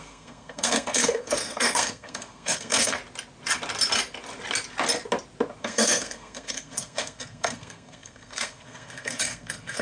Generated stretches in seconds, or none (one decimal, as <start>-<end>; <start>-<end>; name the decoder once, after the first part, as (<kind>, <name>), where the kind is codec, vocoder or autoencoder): 0.0-3.0 (codec, SNAC); 5.6-9.8